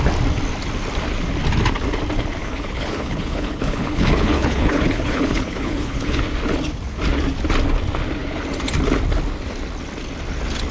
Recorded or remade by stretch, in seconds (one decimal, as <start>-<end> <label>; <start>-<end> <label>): 0.0-2.4 recorded; 2.4-6.2 remade; 6.2-10.7 recorded